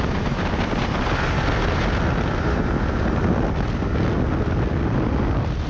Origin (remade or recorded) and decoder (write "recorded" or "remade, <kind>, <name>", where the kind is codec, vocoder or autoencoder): recorded